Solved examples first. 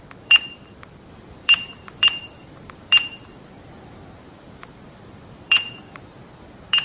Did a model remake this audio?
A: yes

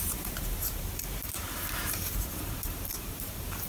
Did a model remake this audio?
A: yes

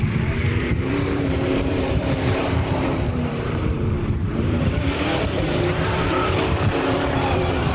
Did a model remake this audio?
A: yes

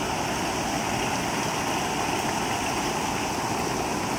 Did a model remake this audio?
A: no